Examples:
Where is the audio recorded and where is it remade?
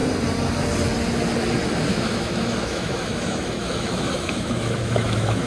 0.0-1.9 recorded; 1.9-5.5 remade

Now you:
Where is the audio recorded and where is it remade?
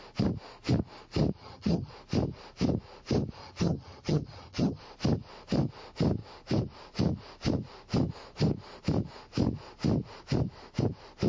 0.0-1.4 recorded; 1.4-1.9 remade; 1.9-3.4 recorded; 3.4-4.8 remade; 4.8-11.3 recorded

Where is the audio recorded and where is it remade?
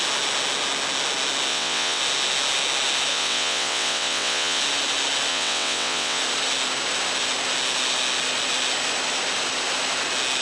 0.0-1.5 recorded; 1.5-2.0 remade; 2.0-3.1 recorded; 3.1-4.6 remade; 4.6-5.3 recorded; 5.3-6.2 remade; 6.2-10.4 recorded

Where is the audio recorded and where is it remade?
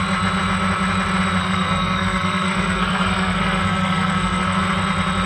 0.0-1.4 recorded; 1.4-4.6 remade; 4.6-5.3 recorded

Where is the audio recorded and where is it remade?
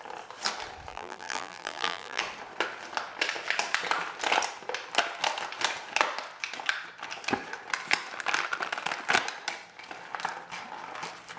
0.0-0.9 recorded; 0.9-2.2 remade; 2.2-11.4 recorded